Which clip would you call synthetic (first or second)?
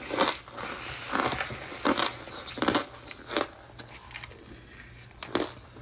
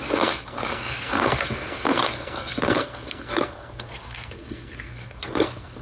second